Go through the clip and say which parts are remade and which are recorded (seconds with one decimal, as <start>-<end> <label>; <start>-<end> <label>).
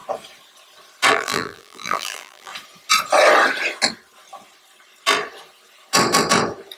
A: 0.0-1.1 recorded; 1.1-2.5 remade; 2.5-6.8 recorded